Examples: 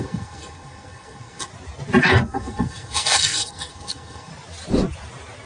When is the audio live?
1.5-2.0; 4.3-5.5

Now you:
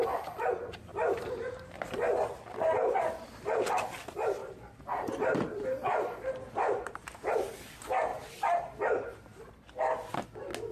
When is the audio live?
0.0-0.9; 1.5-4.4; 7.5-8.1; 9.5-10.7

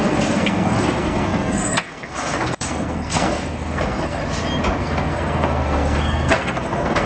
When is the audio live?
4.2-4.8

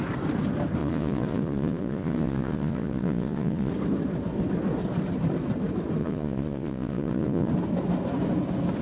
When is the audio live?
0.0-0.8; 3.7-6.0; 7.5-8.8

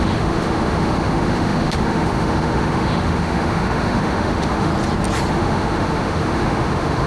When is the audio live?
4.7-5.3

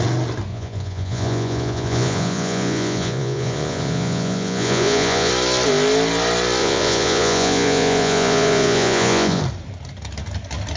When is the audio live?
0.0-0.5; 5.3-6.6; 9.4-10.8

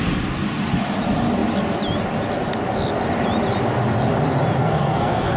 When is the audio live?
0.0-4.6